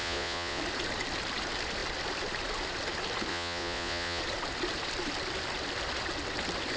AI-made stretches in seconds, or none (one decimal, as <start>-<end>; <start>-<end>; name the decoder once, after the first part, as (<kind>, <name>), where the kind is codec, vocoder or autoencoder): 0.0-0.6 (vocoder, Vocos); 3.3-4.2